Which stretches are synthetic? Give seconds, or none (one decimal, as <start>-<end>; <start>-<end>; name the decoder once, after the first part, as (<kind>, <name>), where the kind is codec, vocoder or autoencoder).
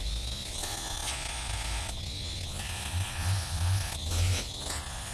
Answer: none